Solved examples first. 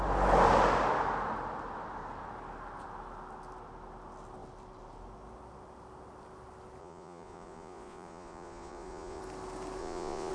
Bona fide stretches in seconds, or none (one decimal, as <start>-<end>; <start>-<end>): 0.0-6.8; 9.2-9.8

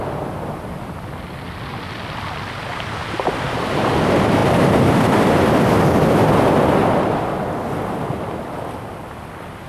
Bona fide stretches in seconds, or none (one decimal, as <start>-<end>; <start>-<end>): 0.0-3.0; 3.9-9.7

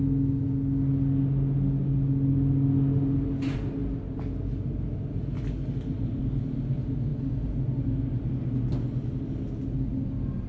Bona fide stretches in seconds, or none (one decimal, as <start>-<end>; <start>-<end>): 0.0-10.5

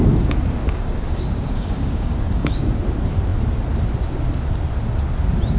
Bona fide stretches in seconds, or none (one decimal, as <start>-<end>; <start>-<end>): 0.0-0.6; 2.8-5.6

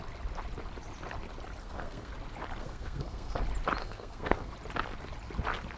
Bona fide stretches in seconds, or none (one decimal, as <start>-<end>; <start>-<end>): 0.0-1.6; 2.1-2.6; 3.4-3.8; 4.5-5.8

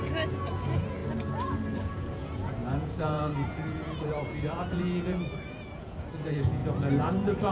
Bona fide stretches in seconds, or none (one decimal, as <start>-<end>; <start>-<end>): 1.0-1.8

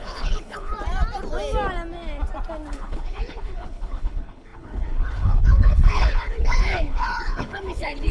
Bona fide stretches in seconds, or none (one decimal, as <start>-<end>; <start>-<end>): 0.7-2.7

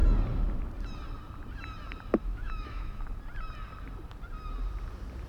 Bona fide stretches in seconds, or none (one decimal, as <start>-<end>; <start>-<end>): 0.0-2.2; 3.0-5.3